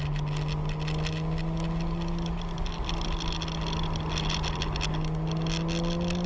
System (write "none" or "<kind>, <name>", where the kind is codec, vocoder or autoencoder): none